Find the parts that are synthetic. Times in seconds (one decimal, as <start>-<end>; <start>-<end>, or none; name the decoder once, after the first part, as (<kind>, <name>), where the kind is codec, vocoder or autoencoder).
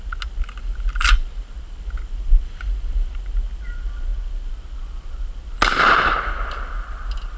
none